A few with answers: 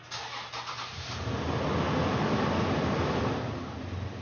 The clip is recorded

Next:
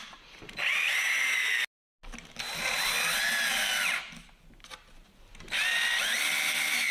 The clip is recorded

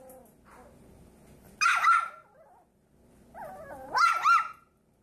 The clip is recorded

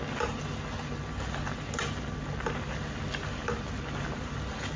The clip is recorded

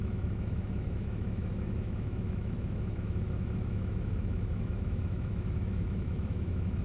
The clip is remade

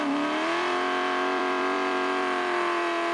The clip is remade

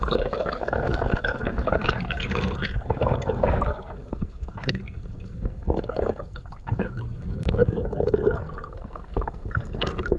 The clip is remade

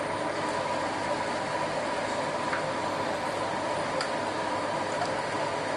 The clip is recorded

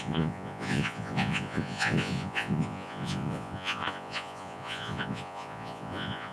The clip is remade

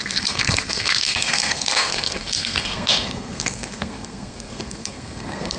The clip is remade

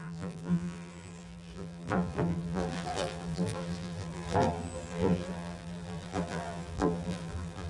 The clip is remade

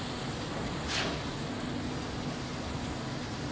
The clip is recorded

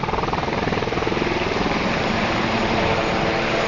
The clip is remade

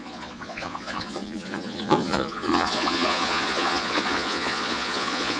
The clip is remade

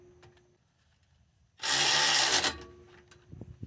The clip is recorded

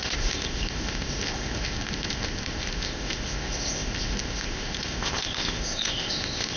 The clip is remade